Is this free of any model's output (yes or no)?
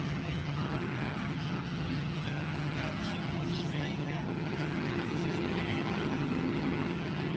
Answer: no